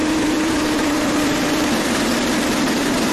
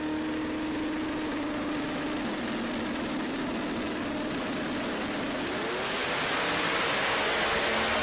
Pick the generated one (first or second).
first